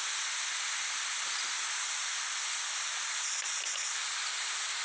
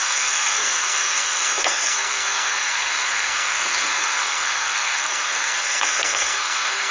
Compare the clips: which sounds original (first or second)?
first